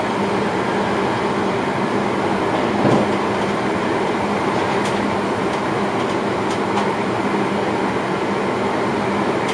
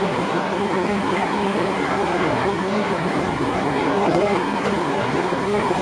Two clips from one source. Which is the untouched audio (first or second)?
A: first